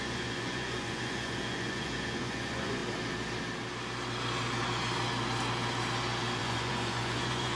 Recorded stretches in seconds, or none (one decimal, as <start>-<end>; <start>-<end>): 2.8-6.4